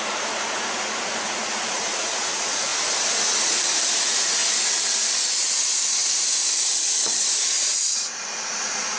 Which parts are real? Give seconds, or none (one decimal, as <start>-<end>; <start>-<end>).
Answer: 2.7-3.4; 4.4-5.5